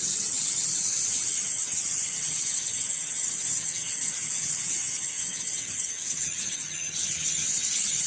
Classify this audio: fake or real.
fake